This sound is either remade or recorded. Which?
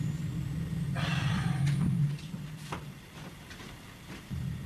remade